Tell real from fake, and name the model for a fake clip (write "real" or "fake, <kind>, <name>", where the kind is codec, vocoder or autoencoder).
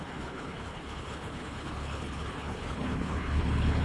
fake, codec, HILCodec